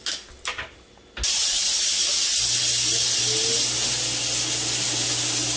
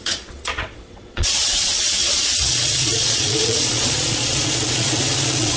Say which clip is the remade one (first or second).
second